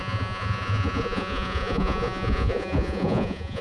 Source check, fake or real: fake